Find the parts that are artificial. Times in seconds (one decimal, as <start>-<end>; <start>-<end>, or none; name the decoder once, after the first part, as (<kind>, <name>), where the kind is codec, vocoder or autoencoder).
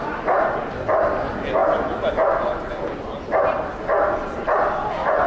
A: none